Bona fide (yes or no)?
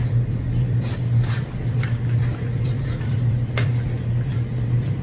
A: no